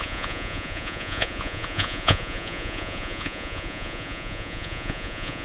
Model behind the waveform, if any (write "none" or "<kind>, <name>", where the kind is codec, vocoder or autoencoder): vocoder, Vocos